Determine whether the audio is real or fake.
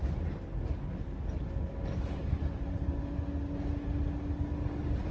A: real